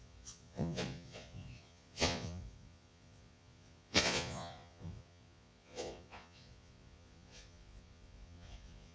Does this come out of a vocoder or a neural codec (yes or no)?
yes